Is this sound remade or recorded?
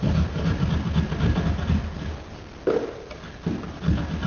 recorded